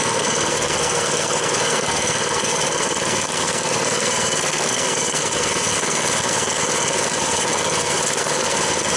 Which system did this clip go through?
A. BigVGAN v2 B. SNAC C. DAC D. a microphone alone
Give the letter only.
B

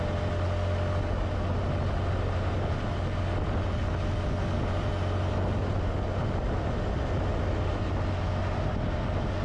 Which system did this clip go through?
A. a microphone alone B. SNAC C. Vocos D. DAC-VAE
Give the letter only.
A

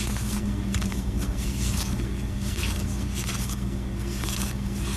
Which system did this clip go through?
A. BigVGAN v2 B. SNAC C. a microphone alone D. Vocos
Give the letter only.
B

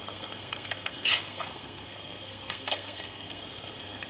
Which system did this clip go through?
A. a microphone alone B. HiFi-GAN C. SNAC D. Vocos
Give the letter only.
C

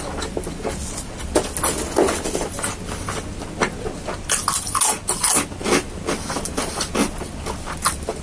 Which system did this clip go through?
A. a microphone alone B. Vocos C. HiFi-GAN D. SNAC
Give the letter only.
A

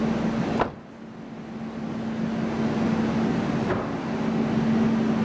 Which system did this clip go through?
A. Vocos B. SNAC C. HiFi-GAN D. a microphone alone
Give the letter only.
D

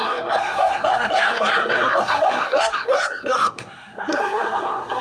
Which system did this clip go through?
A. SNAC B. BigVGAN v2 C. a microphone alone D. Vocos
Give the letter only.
A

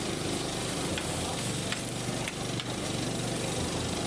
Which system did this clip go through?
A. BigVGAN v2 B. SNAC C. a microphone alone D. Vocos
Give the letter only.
C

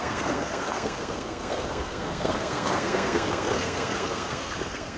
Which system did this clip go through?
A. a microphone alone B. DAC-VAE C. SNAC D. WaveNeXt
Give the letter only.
C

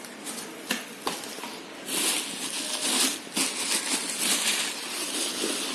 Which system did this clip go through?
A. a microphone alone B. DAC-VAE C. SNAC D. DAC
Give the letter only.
A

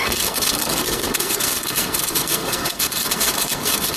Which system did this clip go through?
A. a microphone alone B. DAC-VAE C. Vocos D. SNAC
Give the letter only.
D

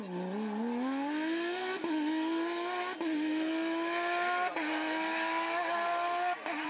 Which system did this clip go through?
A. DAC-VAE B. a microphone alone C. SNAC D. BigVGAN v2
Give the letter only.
B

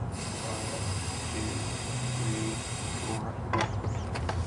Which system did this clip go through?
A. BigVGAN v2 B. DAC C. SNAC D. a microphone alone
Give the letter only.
D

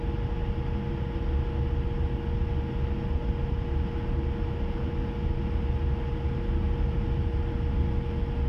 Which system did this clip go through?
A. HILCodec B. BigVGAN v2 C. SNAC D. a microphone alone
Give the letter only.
D